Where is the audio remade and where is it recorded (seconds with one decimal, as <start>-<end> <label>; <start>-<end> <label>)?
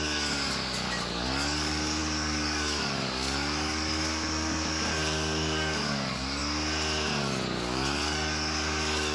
0.0-6.4 remade; 6.4-7.6 recorded; 7.6-9.1 remade